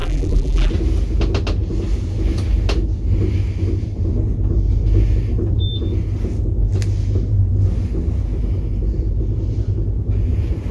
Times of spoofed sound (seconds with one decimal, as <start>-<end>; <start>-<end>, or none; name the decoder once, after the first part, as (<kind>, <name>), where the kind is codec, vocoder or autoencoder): 0.0-0.7 (vocoder, BigVGAN v2)